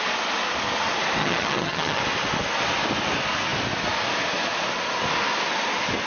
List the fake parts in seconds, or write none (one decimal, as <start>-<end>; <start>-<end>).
1.2-2.0